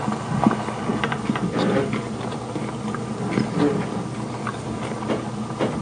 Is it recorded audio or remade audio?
recorded